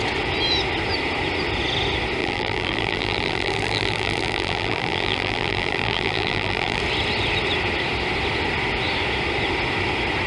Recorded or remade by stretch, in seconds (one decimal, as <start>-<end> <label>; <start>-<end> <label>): 0.0-2.2 recorded; 2.2-6.8 remade; 6.8-10.3 recorded